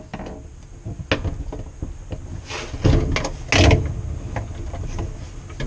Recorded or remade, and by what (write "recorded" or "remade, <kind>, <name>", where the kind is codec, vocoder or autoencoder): recorded